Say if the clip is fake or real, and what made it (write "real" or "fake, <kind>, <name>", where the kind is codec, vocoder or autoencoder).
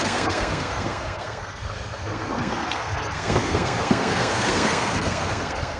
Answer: fake, codec, SNAC